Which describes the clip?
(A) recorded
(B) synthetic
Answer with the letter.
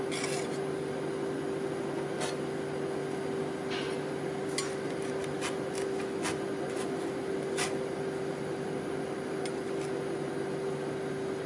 A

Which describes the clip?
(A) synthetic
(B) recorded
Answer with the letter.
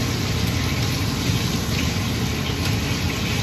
B